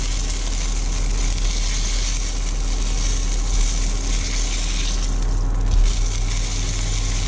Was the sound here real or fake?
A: real